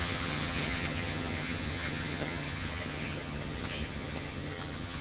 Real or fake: fake